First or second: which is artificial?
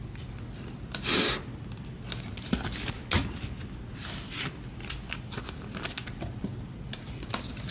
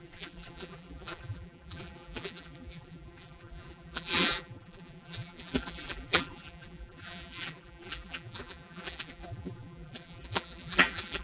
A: second